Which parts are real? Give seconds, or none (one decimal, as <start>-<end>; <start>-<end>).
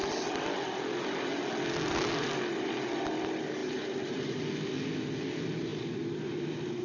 0.0-3.6; 4.4-5.7